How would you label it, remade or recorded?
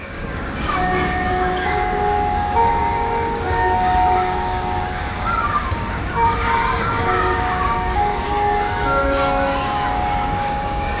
remade